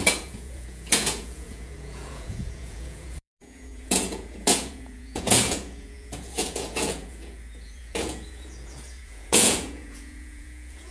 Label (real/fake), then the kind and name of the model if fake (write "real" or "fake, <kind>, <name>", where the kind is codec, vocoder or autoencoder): fake, vocoder, Vocos